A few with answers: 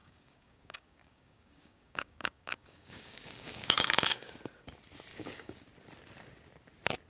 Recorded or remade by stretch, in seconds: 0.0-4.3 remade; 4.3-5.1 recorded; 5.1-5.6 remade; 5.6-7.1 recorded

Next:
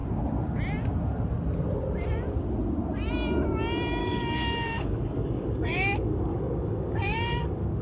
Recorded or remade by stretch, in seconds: 0.0-4.0 recorded; 4.0-7.8 remade

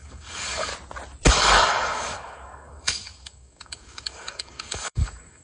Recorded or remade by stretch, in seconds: 0.0-0.7 remade; 0.7-1.3 recorded; 1.3-5.4 remade

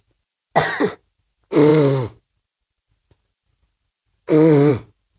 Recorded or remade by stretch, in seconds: 0.0-5.2 recorded

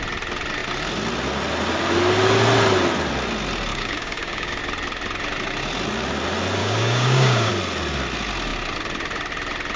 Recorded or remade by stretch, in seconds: 0.0-3.7 recorded; 3.7-4.6 remade; 4.6-6.6 recorded; 6.6-7.5 remade; 7.5-9.8 recorded